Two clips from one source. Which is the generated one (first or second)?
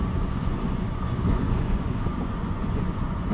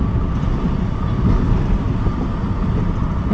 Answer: first